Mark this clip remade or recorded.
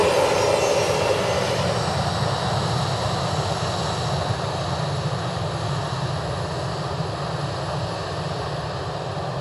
recorded